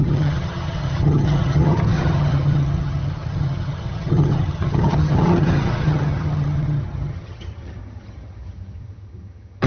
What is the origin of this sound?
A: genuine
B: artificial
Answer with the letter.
B